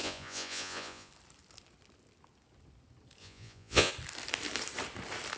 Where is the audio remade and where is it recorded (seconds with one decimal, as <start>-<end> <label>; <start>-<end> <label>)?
0.0-1.1 remade; 1.1-3.2 recorded; 3.2-3.9 remade; 3.9-5.4 recorded